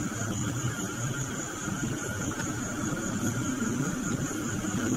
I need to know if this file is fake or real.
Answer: fake